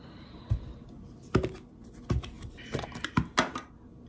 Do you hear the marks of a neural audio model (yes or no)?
no